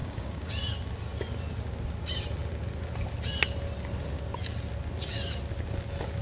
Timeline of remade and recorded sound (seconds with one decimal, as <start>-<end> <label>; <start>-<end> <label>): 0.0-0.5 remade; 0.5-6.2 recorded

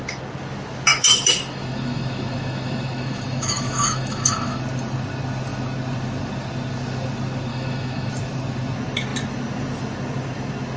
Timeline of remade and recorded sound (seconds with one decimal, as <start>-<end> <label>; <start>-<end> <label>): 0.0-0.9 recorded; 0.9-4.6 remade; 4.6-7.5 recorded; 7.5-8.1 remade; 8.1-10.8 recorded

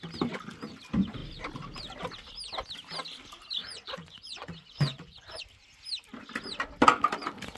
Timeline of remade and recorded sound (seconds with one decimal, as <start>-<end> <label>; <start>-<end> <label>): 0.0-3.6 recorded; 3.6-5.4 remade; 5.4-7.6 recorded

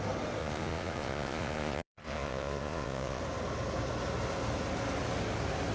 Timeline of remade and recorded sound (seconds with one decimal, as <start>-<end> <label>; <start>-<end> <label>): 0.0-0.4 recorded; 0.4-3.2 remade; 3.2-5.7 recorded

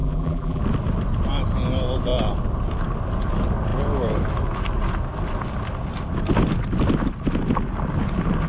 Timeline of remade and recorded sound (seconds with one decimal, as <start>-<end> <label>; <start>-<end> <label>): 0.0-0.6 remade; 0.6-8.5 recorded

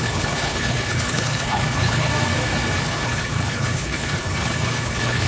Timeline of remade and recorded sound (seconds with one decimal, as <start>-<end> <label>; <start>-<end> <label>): 0.0-2.1 remade; 2.1-2.8 recorded; 2.8-5.3 remade